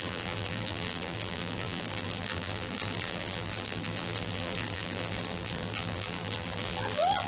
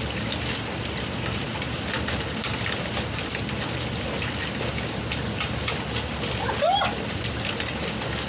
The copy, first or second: first